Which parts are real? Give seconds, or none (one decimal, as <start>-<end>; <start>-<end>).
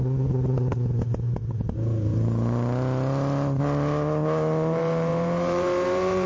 none